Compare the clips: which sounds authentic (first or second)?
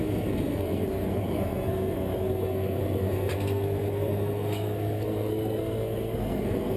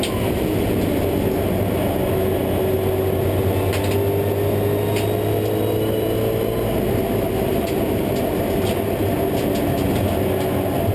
second